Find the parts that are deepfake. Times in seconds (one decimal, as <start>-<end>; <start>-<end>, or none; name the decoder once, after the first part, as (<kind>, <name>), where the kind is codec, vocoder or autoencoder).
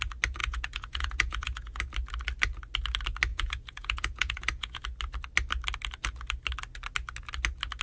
0.4-1.8 (vocoder, Vocos); 3.3-4.8